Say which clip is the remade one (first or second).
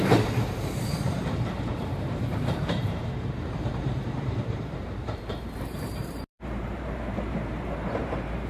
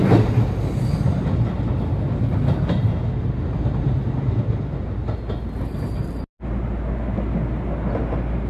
first